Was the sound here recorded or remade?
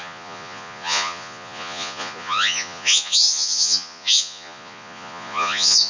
remade